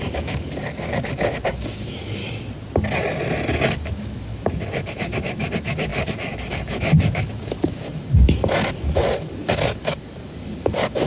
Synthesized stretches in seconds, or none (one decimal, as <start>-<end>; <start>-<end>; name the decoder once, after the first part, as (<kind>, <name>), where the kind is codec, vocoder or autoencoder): 0.0-2.2 (codec, DAC); 3.7-11.1